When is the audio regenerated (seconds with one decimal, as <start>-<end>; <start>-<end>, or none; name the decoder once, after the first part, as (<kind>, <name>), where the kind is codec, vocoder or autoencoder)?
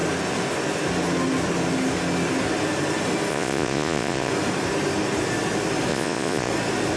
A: 3.3-4.3 (vocoder, Vocos); 5.9-6.5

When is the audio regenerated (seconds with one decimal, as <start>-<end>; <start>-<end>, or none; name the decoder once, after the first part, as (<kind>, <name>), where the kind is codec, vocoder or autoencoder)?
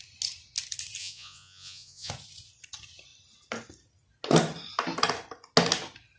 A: 1.0-2.1 (vocoder, Vocos)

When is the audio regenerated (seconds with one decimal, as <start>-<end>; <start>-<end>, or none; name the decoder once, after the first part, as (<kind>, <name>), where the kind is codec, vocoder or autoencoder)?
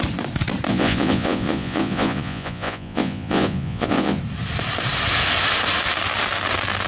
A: 0.7-4.2 (vocoder, Vocos)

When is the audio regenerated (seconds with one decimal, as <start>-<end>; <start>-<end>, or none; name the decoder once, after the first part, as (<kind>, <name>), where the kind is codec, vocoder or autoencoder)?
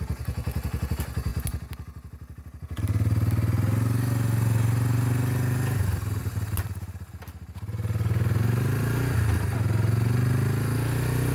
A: none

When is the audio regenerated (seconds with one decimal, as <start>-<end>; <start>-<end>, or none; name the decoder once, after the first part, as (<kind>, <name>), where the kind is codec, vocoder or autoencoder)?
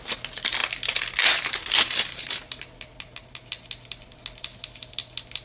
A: none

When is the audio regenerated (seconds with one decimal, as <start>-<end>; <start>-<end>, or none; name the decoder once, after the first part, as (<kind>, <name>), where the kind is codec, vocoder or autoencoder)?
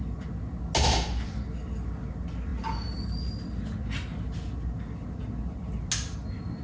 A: none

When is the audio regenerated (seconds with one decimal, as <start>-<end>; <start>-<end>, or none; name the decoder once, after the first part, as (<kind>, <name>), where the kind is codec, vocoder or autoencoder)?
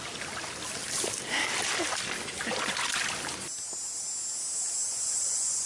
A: 4.9-5.7 (vocoder, Vocos)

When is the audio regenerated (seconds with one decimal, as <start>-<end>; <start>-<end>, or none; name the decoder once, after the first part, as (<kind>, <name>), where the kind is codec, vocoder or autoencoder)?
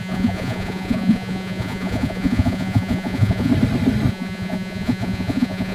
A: 0.0-3.5 (vocoder, Vocos); 4.1-5.7